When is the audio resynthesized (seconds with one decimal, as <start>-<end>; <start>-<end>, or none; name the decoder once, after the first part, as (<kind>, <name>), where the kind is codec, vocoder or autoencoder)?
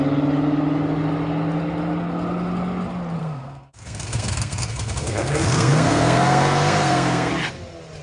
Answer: 3.2-7.3 (codec, SNAC)